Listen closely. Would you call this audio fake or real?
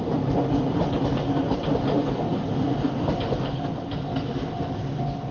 real